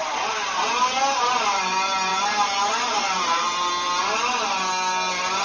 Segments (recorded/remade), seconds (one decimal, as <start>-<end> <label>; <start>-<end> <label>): 0.0-1.4 remade; 1.4-2.1 recorded; 2.1-3.7 remade; 3.7-5.4 recorded